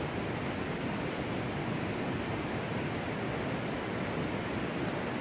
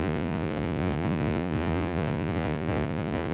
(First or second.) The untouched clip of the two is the first